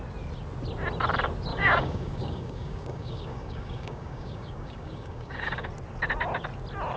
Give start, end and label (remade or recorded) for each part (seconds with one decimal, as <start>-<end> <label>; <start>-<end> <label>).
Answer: 0.0-1.5 recorded; 1.5-5.7 remade; 5.7-7.0 recorded